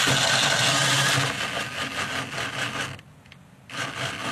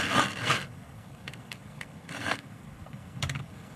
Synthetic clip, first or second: second